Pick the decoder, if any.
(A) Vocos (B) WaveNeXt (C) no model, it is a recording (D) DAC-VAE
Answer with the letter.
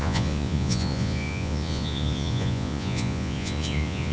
A